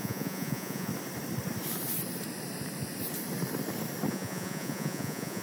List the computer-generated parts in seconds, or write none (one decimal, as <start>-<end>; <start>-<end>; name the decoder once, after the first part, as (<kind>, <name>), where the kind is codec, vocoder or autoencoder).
0.0-0.9 (vocoder, Vocos); 4.1-5.4